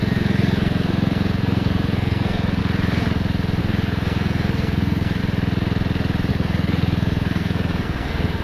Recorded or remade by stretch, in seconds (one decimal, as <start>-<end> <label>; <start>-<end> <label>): 0.0-2.6 remade; 2.6-3.6 recorded; 3.6-5.2 remade; 5.2-6.3 recorded; 6.3-8.4 remade